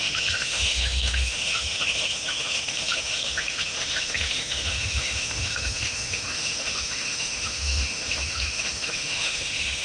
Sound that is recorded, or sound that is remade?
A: remade